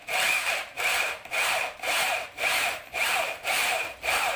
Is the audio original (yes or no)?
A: no